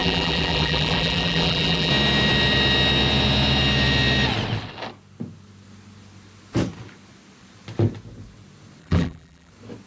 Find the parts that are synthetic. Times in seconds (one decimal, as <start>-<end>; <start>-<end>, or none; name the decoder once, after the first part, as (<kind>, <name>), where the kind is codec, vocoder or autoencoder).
0.0-1.9 (vocoder, BigVGAN v2); 8.8-9.5